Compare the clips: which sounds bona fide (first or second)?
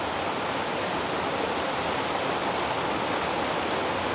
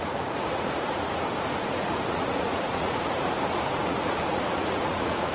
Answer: first